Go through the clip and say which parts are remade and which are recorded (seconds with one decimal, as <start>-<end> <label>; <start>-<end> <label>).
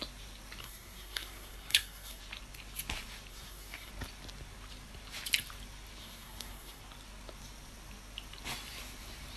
0.0-0.6 recorded; 0.6-2.2 remade; 2.2-3.3 recorded; 3.3-3.9 remade; 3.9-6.0 recorded; 6.0-6.8 remade; 6.8-9.4 recorded